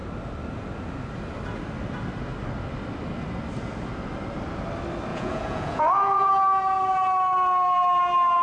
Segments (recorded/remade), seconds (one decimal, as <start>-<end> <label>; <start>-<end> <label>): 0.0-5.1 recorded; 5.1-6.3 remade; 6.3-8.4 recorded